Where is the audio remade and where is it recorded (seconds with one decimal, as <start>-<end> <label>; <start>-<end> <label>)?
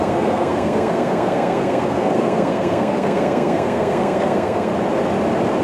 0.0-4.7 remade; 4.7-5.6 recorded